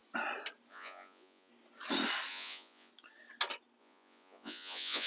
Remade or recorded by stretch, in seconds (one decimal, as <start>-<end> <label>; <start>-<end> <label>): 0.0-0.7 recorded; 0.7-1.5 remade; 1.5-2.3 recorded; 2.3-2.9 remade; 2.9-3.8 recorded; 3.8-5.1 remade